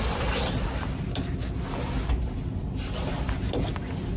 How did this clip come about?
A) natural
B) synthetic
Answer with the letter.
A